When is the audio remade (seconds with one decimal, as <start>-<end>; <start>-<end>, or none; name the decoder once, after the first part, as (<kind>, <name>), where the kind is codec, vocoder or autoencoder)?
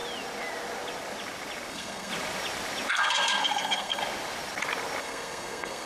1.7-2.1 (codec, SNAC); 2.9-4.0; 5.0-5.9